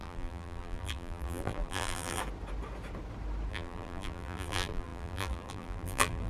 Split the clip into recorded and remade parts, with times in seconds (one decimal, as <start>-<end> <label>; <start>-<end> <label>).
0.0-2.2 remade; 2.2-3.5 recorded; 3.5-6.3 remade